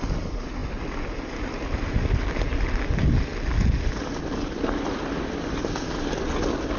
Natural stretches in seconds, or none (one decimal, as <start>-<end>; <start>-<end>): 0.0-6.8